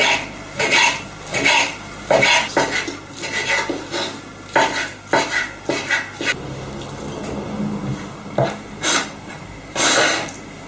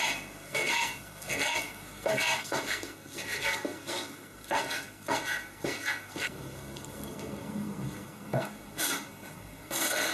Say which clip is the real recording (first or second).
first